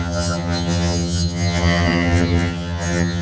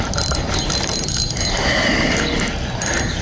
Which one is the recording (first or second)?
second